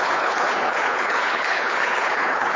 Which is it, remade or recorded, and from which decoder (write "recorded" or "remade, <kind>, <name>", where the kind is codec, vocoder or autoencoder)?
remade, codec, HILCodec